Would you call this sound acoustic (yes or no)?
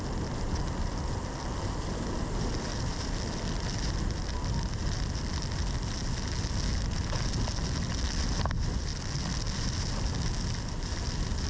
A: yes